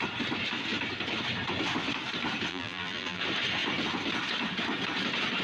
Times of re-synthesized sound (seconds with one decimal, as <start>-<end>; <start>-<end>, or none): 2.5-3.2